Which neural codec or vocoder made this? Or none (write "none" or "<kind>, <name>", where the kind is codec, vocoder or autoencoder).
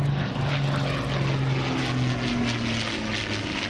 none